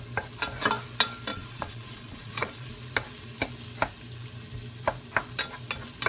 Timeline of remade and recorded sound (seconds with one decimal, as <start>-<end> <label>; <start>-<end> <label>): 0.0-1.3 recorded; 1.3-2.7 remade; 2.7-6.1 recorded